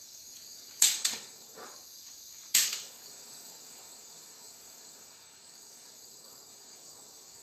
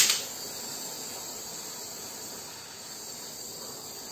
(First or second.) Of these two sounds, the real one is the second